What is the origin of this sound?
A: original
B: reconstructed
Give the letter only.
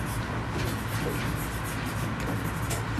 A